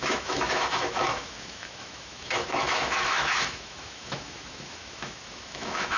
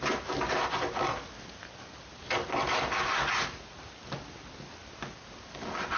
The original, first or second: second